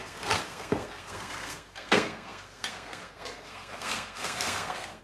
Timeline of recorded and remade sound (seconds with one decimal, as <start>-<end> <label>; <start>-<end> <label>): 0.0-5.0 remade